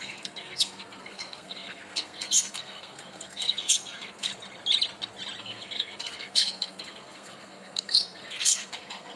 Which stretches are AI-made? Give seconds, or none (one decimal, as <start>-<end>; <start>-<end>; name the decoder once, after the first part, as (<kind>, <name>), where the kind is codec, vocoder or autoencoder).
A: 0.0-4.3 (codec, SNAC); 5.4-9.2